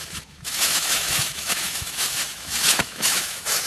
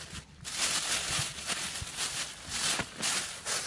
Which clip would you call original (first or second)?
second